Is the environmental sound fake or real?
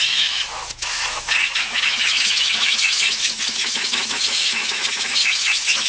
fake